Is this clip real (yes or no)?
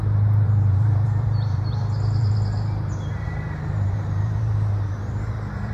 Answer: no